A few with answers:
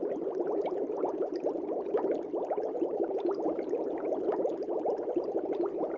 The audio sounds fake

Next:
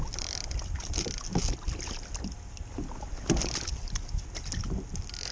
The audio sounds real